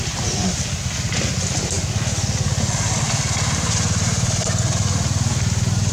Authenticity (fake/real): real